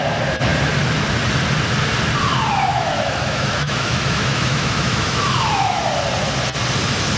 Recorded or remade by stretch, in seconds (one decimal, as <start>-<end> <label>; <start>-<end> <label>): 0.0-2.7 recorded; 2.7-5.8 remade; 5.8-7.2 recorded